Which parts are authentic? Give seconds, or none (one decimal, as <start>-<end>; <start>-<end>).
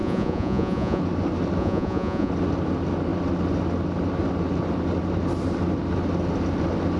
1.0-1.6; 2.3-7.0